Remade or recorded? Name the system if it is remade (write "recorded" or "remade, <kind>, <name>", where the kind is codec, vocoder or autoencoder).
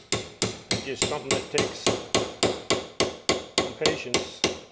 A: recorded